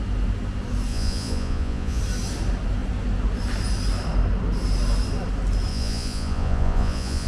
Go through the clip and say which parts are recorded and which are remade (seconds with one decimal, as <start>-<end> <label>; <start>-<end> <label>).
0.0-0.9 recorded; 0.9-2.0 remade; 2.0-5.7 recorded; 5.7-7.3 remade